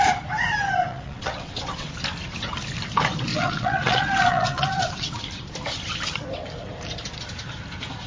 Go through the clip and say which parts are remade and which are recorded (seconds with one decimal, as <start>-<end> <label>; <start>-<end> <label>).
0.0-0.9 recorded; 0.9-1.9 remade; 1.9-3.3 recorded; 3.3-5.2 remade; 5.2-8.1 recorded

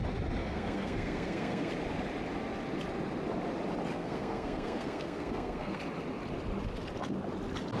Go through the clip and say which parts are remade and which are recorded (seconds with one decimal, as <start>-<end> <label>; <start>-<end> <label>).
0.0-0.4 recorded; 0.4-1.7 remade; 1.7-3.9 recorded; 3.9-5.8 remade; 5.8-7.8 recorded